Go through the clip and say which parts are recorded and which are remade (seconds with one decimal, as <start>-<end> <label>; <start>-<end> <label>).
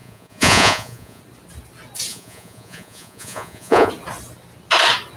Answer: 0.0-1.2 remade; 1.2-2.1 recorded; 2.1-3.9 remade; 3.9-5.2 recorded